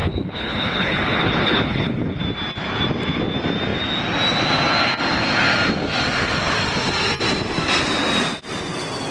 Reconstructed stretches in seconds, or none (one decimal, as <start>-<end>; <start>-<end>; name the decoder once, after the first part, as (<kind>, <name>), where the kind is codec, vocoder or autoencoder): 0.0-2.2 (codec, HILCodec)